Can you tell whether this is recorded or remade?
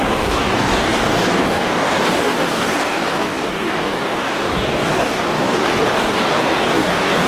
remade